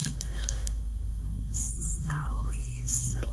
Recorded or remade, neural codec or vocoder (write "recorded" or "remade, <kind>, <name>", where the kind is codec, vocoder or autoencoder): remade, codec, SNAC